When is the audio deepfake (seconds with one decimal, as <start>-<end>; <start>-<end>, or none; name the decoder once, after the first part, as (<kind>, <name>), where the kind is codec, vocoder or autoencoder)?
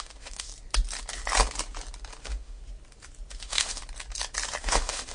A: 0.0-0.5 (autoencoder, DAC-VAE); 2.2-2.6; 3.3-3.8; 4.6-5.1